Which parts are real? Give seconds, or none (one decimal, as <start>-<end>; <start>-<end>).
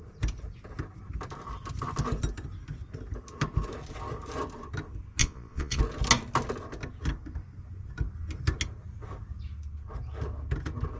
0.0-5.2; 5.8-11.0